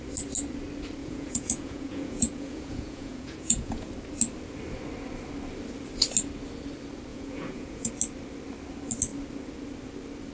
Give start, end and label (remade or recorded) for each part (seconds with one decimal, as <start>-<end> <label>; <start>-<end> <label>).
0.0-1.0 recorded; 1.0-3.9 remade; 3.9-7.1 recorded; 7.1-7.9 remade; 7.9-10.3 recorded